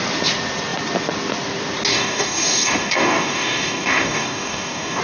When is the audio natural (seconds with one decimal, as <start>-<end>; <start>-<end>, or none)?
0.0-1.9